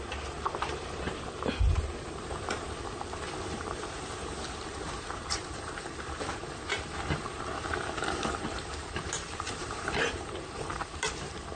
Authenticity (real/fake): fake